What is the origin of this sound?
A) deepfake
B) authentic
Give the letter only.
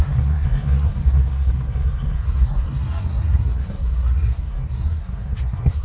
A